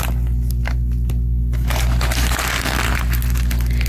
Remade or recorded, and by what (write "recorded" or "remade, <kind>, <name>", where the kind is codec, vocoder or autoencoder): recorded